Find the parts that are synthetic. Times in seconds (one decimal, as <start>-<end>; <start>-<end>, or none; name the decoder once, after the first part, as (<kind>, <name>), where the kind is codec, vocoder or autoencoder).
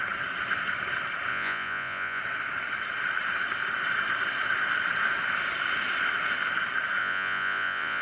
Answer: 1.3-2.2 (vocoder, Vocos); 7.0-8.0